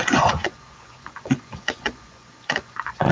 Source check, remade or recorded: remade